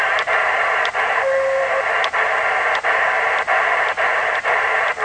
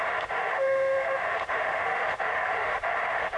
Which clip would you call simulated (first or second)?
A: second